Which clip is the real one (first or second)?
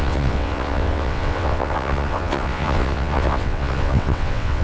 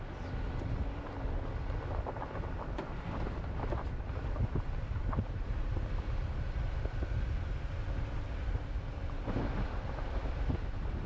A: second